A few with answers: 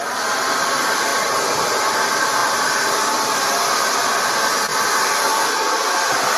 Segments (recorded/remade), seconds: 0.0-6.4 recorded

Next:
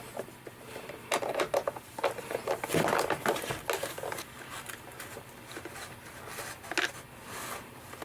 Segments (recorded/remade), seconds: 0.0-8.0 recorded

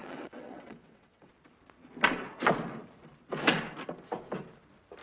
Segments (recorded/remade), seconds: 0.0-1.3 remade; 1.3-5.0 recorded

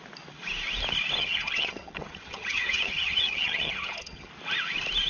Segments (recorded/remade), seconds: 0.0-1.2 recorded; 1.2-4.3 remade; 4.3-5.1 recorded